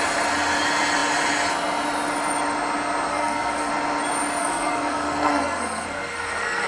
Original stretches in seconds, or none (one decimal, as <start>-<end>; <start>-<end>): 0.0-3.1; 3.7-4.4